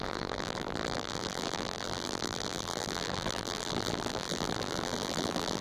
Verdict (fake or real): fake